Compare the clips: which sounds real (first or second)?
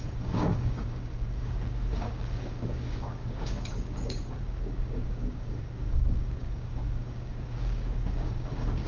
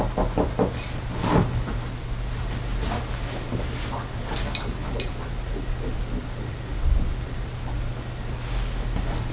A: second